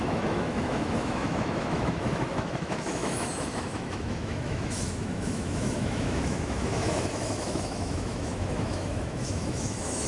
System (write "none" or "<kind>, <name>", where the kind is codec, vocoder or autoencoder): autoencoder, DAC-VAE